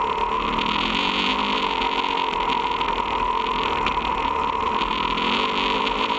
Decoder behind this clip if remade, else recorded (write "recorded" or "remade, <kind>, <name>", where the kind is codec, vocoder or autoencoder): recorded